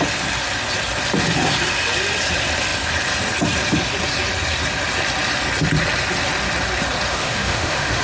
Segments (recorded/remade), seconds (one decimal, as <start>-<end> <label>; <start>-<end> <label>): 0.0-7.1 recorded; 7.1-8.0 remade